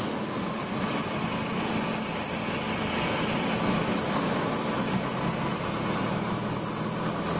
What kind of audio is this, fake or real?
real